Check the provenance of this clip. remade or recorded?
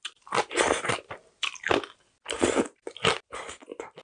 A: recorded